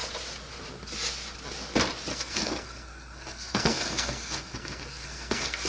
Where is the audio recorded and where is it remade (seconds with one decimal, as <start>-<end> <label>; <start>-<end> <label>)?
0.0-2.1 recorded; 2.1-5.7 remade